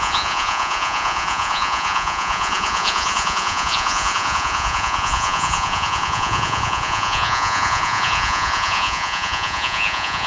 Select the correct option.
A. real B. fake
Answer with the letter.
B